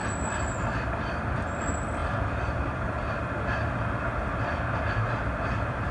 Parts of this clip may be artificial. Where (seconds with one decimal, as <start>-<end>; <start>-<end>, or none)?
none